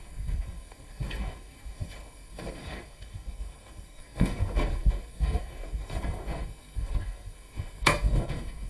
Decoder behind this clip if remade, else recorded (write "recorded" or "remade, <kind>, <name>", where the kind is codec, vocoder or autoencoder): remade, codec, SNAC